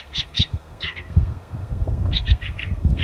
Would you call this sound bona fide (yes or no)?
no